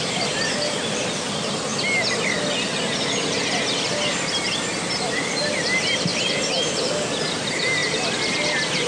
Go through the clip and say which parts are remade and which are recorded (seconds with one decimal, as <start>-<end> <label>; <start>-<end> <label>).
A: 0.0-1.7 remade; 1.7-2.8 recorded; 2.8-6.1 remade; 6.1-7.1 recorded; 7.1-8.9 remade

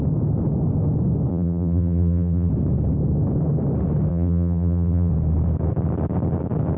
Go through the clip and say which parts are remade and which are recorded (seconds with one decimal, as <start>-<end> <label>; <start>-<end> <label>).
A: 0.0-1.3 recorded; 1.3-2.5 remade; 2.5-4.1 recorded; 4.1-5.1 remade; 5.1-6.8 recorded

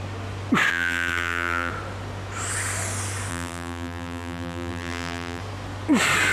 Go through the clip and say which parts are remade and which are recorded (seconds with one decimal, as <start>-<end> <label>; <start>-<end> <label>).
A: 0.0-0.7 recorded; 0.7-1.7 remade; 1.7-3.3 recorded; 3.3-5.4 remade; 5.4-6.3 recorded

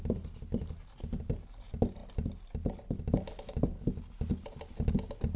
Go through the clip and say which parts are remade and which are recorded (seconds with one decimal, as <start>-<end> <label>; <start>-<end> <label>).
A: 0.0-5.4 recorded

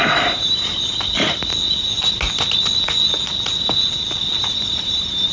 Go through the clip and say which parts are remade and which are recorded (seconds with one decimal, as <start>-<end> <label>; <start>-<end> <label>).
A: 0.0-1.5 remade; 1.5-4.4 recorded; 4.4-5.3 remade

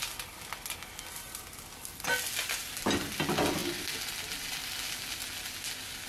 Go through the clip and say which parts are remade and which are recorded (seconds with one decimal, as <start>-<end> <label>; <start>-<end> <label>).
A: 0.0-6.1 recorded